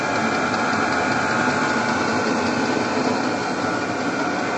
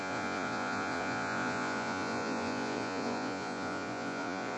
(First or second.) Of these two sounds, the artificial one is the second